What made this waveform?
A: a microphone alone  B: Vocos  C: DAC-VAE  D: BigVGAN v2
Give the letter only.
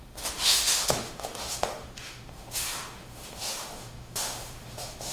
C